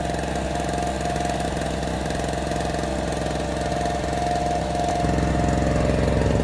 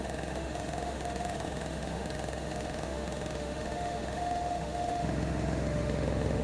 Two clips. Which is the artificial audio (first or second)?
second